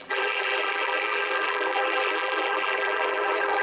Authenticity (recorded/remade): remade